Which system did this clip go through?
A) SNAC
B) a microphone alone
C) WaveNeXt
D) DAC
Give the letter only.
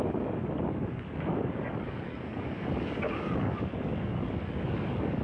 D